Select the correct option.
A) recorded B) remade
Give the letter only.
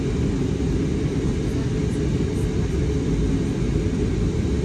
A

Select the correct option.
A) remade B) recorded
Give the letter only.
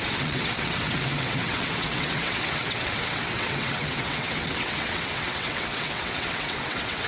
A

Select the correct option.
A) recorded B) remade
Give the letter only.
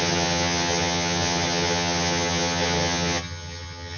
B